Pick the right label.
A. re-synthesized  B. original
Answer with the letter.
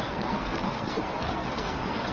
A